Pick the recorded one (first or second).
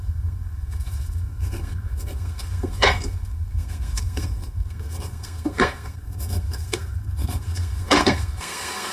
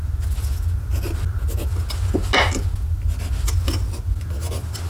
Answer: second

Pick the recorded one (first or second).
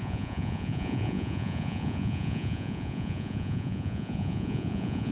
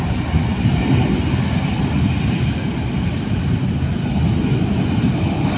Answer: second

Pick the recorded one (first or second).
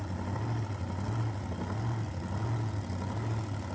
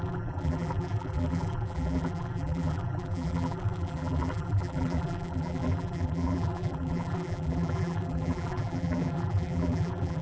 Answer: first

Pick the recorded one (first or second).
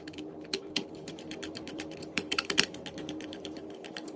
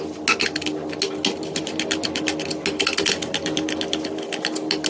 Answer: second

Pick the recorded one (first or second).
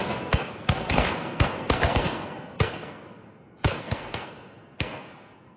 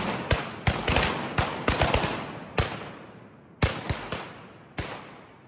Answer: second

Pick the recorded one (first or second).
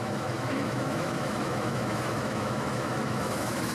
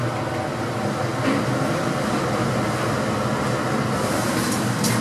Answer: second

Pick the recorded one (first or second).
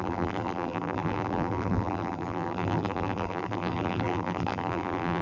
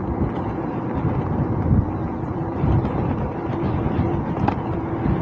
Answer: second